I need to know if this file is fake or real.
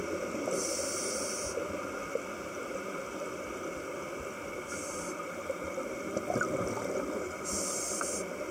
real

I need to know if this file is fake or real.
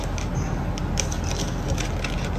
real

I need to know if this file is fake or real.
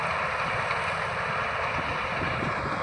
real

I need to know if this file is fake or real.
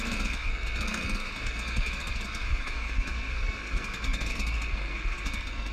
fake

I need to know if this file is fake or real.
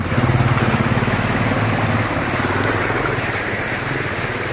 real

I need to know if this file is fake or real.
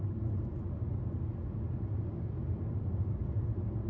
real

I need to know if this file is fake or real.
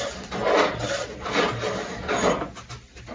real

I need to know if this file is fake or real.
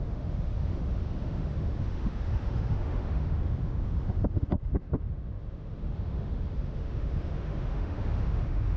fake